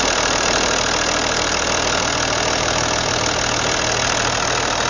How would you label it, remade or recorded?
remade